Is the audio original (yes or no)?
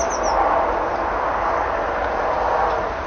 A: yes